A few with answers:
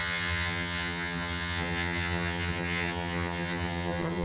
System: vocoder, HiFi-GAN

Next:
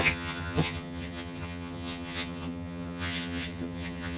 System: vocoder, HiFi-GAN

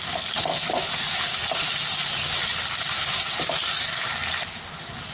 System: none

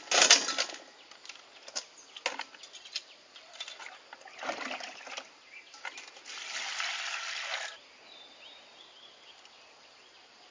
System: none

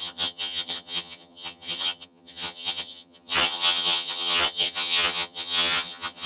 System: vocoder, HiFi-GAN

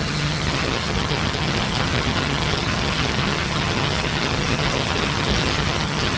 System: vocoder, HiFi-GAN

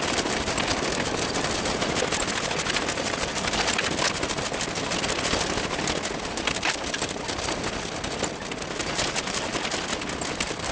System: none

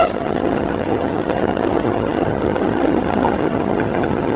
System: vocoder, HiFi-GAN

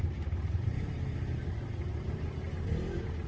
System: none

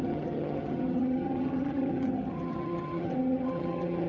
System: vocoder, HiFi-GAN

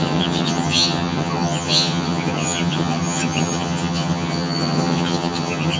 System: vocoder, HiFi-GAN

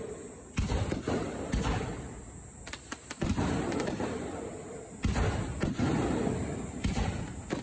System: none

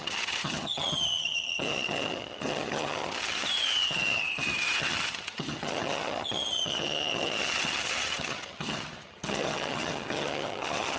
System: vocoder, HiFi-GAN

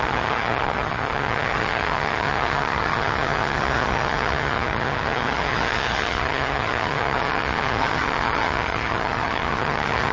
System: vocoder, HiFi-GAN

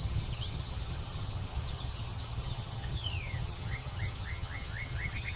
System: vocoder, HiFi-GAN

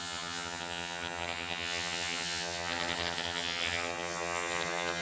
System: vocoder, HiFi-GAN